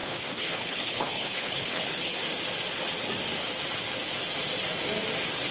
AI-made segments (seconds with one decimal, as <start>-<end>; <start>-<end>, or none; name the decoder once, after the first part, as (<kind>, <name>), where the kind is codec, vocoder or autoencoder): 0.0-2.2 (codec, HILCodec)